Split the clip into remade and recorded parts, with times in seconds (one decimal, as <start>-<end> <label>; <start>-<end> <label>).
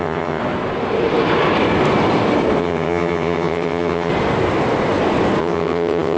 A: 0.0-0.4 remade; 0.4-2.6 recorded; 2.6-4.1 remade; 4.1-5.4 recorded; 5.4-6.2 remade